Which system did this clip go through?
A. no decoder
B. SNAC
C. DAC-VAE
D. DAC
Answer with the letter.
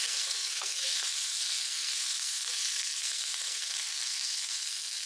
B